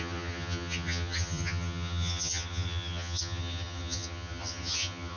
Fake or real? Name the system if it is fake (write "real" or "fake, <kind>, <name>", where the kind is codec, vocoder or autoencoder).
fake, vocoder, HiFi-GAN